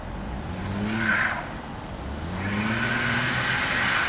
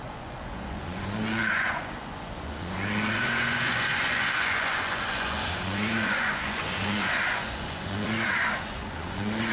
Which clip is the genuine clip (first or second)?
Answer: first